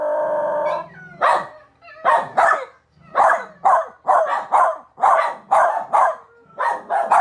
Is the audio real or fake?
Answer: real